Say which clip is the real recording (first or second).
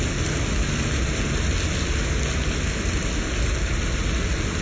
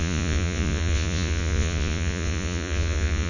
first